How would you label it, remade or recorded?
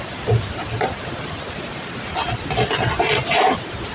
recorded